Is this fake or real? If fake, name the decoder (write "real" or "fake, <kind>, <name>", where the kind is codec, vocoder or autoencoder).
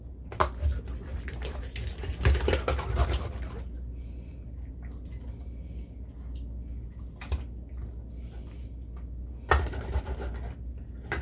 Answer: real